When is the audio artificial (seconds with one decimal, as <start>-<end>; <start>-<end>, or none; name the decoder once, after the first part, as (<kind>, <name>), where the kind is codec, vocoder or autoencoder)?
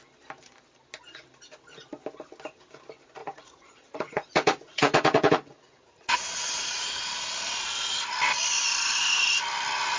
3.2-7.1 (vocoder, Vocos)